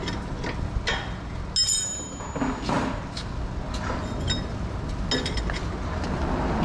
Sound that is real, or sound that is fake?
real